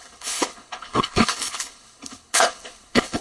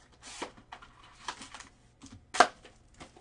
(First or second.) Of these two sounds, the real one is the second